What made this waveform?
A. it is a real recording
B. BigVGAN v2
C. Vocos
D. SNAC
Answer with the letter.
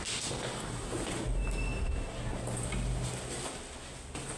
A